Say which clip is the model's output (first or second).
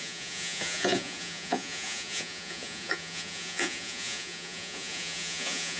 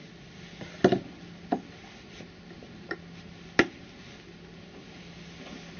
first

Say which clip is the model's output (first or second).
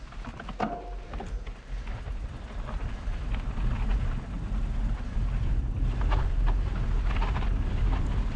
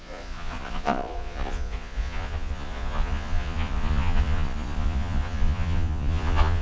second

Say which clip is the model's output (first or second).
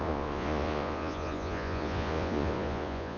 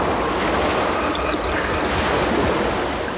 first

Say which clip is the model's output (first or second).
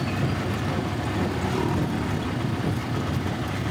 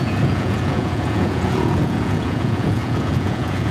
second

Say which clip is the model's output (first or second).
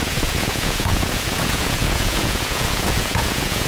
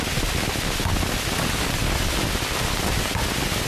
first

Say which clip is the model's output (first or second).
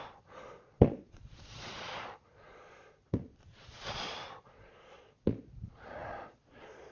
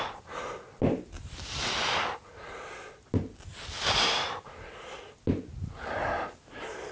first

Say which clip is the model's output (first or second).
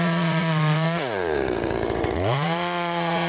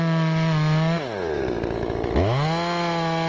first